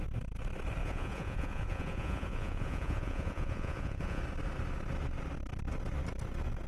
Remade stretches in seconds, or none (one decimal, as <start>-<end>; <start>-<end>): 0.8-4.2